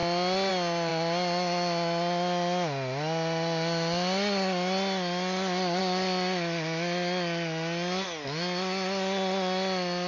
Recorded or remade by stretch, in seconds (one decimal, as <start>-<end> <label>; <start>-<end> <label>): 0.0-10.1 recorded